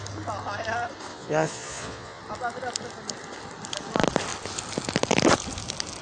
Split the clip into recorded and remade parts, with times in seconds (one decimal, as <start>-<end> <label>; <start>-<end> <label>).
0.0-1.1 recorded; 1.1-2.2 remade; 2.2-6.0 recorded